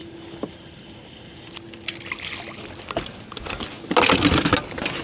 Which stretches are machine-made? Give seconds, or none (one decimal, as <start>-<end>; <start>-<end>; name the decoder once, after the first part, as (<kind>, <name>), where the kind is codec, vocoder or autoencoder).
none